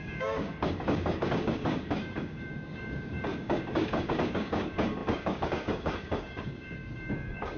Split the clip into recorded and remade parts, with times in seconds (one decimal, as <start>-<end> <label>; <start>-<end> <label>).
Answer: 0.0-7.6 remade